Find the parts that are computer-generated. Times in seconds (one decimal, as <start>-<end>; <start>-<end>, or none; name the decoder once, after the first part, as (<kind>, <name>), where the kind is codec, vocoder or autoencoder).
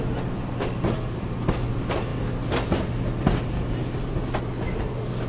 none